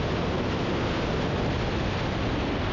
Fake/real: real